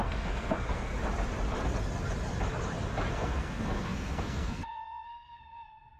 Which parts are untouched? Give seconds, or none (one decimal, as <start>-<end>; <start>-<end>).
0.9-3.1